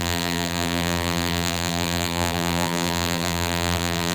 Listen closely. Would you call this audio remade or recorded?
remade